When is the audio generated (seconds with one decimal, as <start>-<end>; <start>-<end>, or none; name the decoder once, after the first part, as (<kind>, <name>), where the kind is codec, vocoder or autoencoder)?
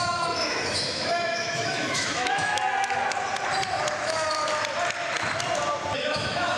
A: 0.0-2.5 (autoencoder, DAC-VAE); 4.0-4.4; 6.0-6.6